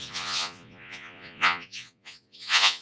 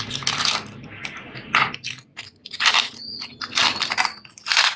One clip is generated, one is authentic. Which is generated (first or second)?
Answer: first